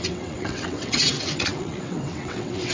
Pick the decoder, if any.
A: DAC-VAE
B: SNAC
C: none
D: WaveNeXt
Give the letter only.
D